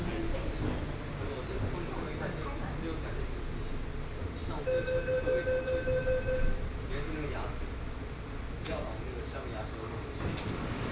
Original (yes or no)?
yes